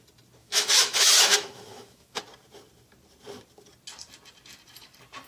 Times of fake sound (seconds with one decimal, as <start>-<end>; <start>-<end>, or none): 0.4-2.2